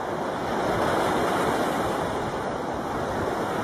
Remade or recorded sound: recorded